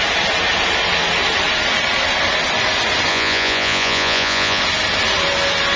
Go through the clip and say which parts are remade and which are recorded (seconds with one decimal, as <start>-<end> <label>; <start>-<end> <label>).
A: 0.0-3.1 recorded; 3.1-4.6 remade; 4.6-5.8 recorded